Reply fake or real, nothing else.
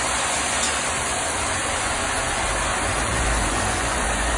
fake